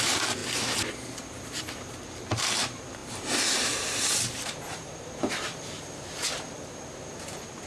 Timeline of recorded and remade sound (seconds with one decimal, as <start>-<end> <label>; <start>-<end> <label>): 0.0-0.4 remade; 0.4-0.9 recorded; 0.9-7.7 remade